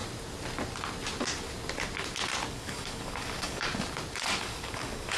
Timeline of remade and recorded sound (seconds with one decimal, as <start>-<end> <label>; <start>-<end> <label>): 0.0-2.5 recorded; 2.5-3.7 remade; 3.7-4.4 recorded; 4.4-5.2 remade